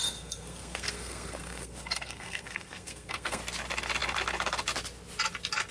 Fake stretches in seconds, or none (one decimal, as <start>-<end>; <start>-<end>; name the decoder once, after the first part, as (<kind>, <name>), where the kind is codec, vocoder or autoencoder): 0.0-3.4 (codec, SNAC)